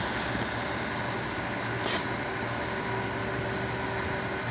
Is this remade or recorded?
recorded